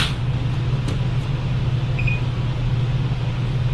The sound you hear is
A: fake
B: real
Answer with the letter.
B